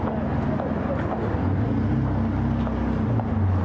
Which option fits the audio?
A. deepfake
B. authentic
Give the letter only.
B